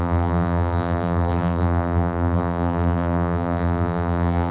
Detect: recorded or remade remade